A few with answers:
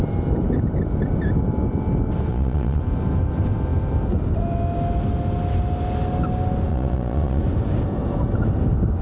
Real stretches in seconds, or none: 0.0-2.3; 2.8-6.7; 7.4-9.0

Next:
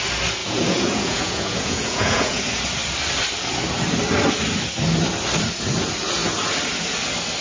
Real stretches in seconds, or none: 0.0-0.4; 2.4-7.4

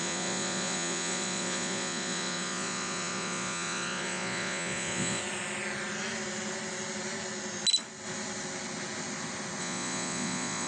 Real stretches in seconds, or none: 5.2-9.6

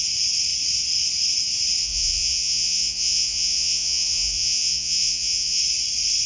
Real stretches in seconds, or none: 0.0-1.8; 5.6-6.3

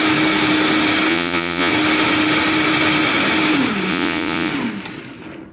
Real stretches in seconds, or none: 0.0-1.1; 1.7-3.9; 4.5-5.5